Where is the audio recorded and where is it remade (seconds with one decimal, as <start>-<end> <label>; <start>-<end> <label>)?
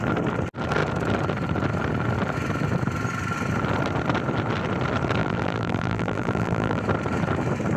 0.0-5.2 recorded; 5.2-6.8 remade; 6.8-7.8 recorded